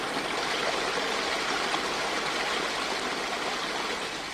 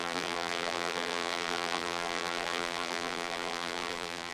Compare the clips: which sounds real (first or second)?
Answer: first